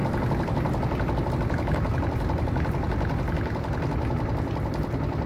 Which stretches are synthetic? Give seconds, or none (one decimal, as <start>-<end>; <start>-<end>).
none